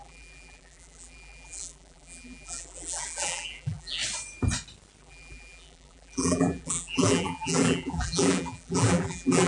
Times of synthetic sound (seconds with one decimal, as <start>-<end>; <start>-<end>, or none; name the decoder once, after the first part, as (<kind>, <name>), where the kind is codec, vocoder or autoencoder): 0.0-4.0 (vocoder, BigVGAN v2); 5.0-9.5